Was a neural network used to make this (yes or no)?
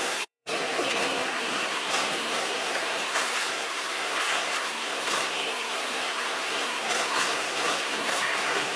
yes